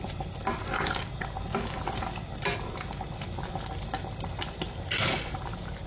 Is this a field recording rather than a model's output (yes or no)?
yes